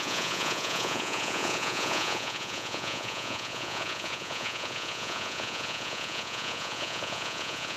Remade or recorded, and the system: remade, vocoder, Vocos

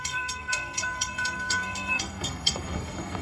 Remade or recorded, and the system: remade, codec, SNAC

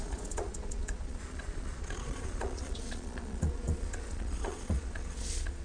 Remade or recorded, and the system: remade, vocoder, Vocos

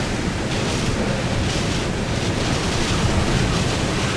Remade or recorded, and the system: recorded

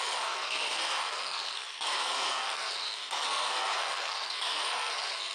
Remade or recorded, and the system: remade, codec, SNAC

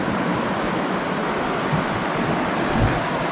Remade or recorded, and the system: recorded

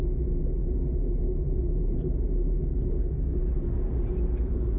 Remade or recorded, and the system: recorded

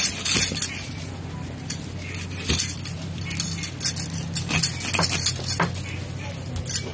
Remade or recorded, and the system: recorded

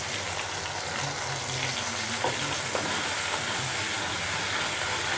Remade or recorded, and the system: recorded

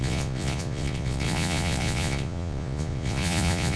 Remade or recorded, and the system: remade, vocoder, Vocos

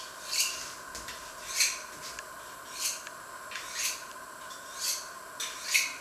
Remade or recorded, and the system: recorded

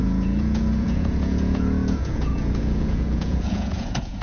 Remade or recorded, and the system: remade, vocoder, Vocos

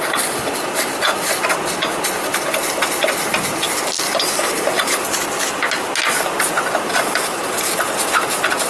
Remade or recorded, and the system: recorded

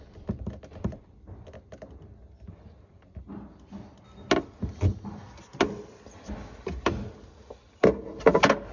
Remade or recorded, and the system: recorded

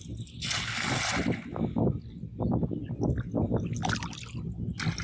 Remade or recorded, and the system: recorded